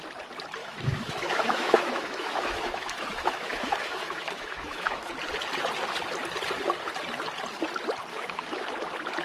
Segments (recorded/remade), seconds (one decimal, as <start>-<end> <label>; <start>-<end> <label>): 0.0-0.6 recorded; 0.6-5.1 remade; 5.1-8.1 recorded; 8.1-8.7 remade; 8.7-9.2 recorded